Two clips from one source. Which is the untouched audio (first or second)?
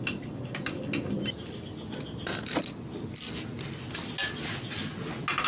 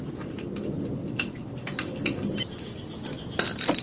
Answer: first